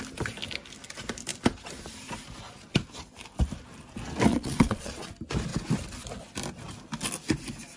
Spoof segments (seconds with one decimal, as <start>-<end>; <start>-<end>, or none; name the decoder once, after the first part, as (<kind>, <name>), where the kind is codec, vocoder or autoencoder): 4.3-5.1 (vocoder, Vocos)